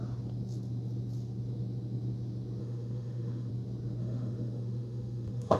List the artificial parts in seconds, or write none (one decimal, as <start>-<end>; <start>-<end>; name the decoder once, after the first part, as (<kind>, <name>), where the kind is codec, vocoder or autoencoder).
2.6-3.5 (autoencoder, DAC-VAE); 4.0-5.6

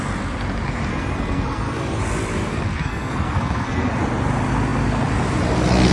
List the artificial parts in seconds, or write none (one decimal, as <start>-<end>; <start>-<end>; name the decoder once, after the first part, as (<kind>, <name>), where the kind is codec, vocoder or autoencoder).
0.9-2.0 (codec, SNAC); 2.5-3.9